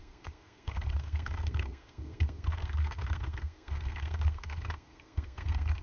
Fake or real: fake